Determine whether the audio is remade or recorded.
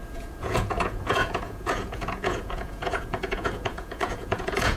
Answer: remade